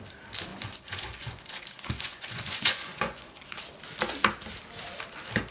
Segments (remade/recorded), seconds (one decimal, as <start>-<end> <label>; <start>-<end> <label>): 0.0-0.5 recorded; 0.5-3.6 remade; 3.6-5.5 recorded

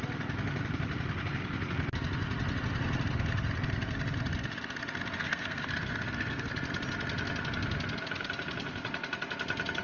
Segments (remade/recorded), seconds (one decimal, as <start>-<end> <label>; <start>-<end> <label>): 0.0-5.2 recorded; 5.2-6.5 remade; 6.5-9.8 recorded